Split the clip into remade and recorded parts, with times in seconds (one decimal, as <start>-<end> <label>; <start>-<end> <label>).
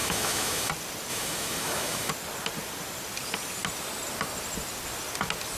0.0-0.7 remade; 0.7-1.1 recorded; 1.1-2.1 remade; 2.1-5.6 recorded